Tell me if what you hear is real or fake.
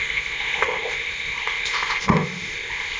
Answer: fake